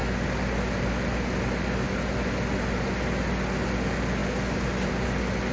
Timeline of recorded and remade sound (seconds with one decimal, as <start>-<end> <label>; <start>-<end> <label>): 0.0-5.5 recorded